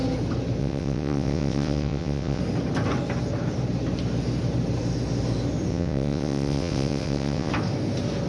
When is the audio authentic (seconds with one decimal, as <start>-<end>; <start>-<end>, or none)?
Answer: 0.0-0.6; 2.4-5.7; 7.5-8.3